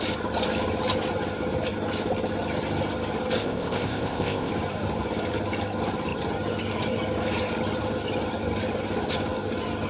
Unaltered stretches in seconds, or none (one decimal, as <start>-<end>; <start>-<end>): 0.0-3.4; 4.5-9.9